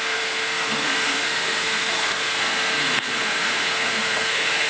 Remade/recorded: remade